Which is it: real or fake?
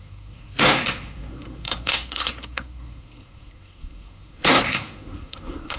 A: fake